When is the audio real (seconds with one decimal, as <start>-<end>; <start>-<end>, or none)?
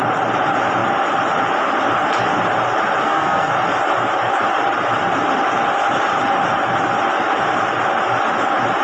0.0-3.0; 3.5-8.8